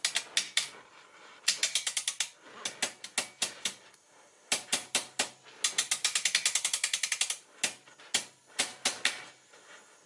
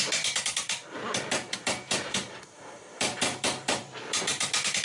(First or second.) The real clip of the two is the first